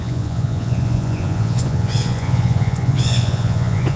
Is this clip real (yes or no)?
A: no